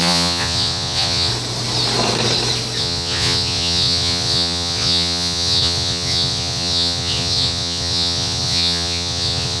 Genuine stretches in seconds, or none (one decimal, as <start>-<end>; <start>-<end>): 1.3-2.8